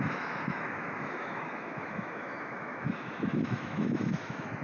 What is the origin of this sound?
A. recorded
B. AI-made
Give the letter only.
B